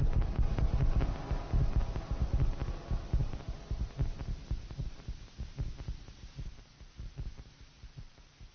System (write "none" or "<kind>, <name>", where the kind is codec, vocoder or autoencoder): none